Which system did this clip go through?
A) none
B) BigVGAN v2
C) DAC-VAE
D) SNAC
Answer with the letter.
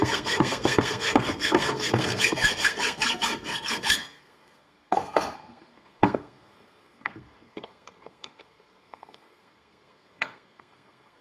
D